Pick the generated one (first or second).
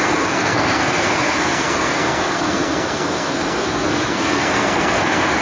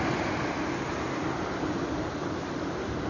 first